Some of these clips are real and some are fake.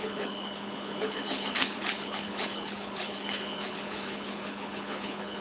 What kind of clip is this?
fake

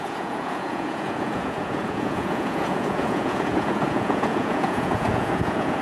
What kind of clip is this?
fake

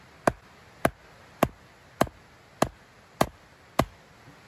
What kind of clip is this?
real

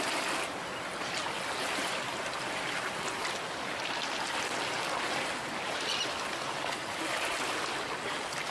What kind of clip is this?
real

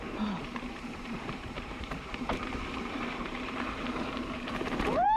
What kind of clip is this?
fake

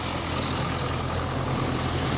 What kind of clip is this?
real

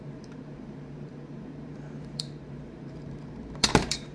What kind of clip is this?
fake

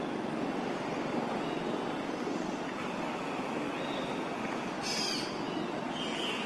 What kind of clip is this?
real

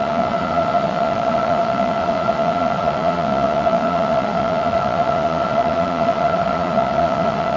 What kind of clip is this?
fake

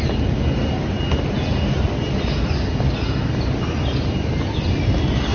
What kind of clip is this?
real